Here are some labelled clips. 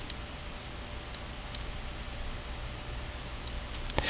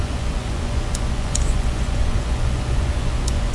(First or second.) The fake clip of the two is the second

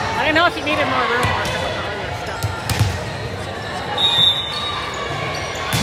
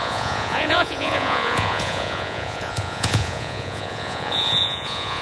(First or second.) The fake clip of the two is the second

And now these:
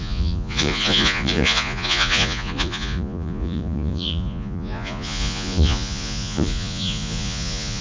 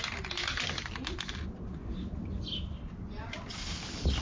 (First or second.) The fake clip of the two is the first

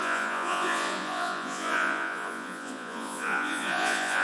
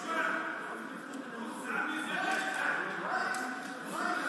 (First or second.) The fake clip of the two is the first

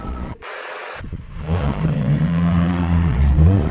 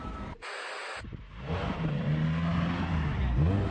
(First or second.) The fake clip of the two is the first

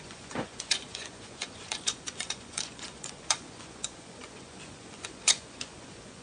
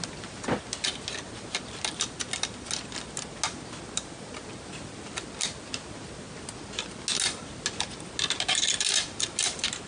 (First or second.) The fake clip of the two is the first